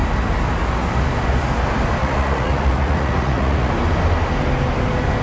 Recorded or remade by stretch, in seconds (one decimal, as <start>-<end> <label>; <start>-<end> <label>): 0.0-2.0 recorded; 2.0-3.7 remade; 3.7-5.2 recorded